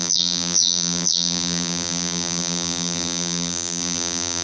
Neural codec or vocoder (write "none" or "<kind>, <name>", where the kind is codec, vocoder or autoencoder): vocoder, BigVGAN v2